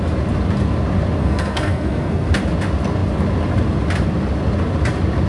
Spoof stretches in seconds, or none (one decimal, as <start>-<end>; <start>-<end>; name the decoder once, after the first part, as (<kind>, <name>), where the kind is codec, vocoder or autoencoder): 1.2-2.4 (codec, SNAC)